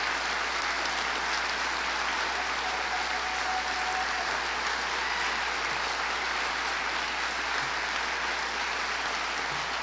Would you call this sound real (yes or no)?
yes